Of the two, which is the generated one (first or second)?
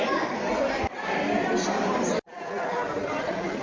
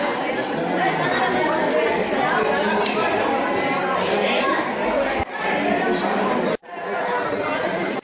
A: first